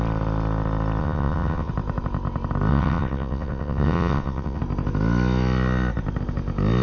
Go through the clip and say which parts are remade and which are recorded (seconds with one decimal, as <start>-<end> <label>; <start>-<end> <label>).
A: 0.0-1.0 recorded; 1.0-1.7 remade; 1.7-2.7 recorded; 2.7-4.6 remade; 4.6-6.8 recorded

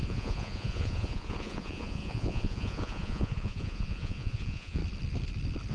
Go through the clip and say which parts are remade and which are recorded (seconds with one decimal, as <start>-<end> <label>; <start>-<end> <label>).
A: 0.0-4.8 remade; 4.8-5.7 recorded

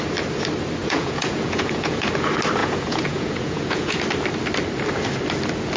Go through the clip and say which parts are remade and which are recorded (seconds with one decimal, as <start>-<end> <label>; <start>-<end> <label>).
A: 0.0-0.8 recorded; 0.8-2.1 remade; 2.1-2.6 recorded; 2.6-4.0 remade; 4.0-5.8 recorded

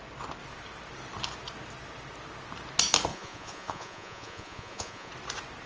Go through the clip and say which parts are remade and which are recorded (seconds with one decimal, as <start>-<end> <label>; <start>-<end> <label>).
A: 0.0-3.1 recorded; 3.1-5.1 remade; 5.1-5.7 recorded

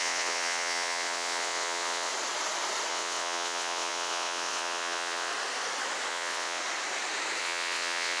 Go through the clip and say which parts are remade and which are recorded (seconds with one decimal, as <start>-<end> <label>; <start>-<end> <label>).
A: 0.0-2.1 remade; 2.1-2.9 recorded; 2.9-5.3 remade; 5.3-6.1 recorded; 6.1-6.6 remade; 6.6-7.4 recorded; 7.4-8.2 remade